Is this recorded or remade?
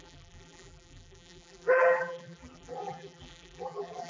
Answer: remade